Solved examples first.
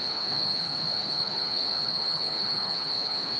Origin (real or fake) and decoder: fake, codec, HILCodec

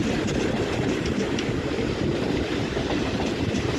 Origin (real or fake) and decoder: fake, vocoder, BigVGAN v2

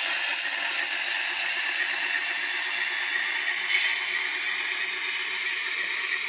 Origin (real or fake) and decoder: real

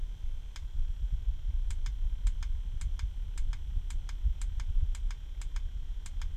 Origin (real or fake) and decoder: real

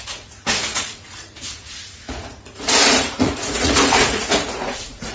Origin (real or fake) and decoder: fake, vocoder, Vocos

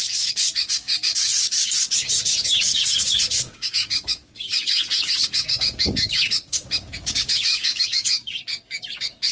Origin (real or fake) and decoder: fake, codec, DAC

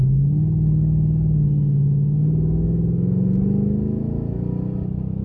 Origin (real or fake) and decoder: real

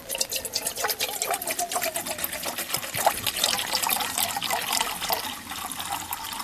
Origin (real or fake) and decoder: real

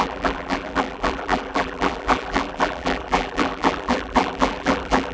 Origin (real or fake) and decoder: fake, vocoder, BigVGAN v2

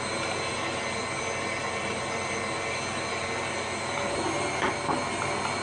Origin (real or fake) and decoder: real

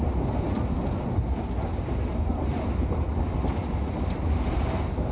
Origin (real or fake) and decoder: real